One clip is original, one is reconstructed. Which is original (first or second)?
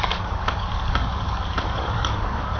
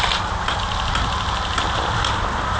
second